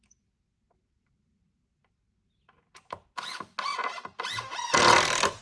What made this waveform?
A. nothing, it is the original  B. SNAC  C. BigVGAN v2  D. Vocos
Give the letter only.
A